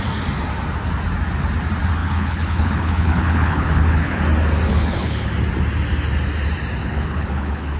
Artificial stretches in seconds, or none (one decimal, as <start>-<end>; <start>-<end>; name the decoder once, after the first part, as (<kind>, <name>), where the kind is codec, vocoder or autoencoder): 2.0-4.2 (codec, HILCodec); 4.7-5.3; 6.8-7.8